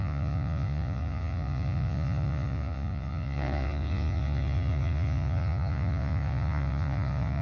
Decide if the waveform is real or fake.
fake